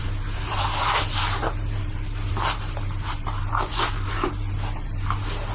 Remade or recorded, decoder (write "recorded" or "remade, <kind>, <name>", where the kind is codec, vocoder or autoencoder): remade, vocoder, BigVGAN v2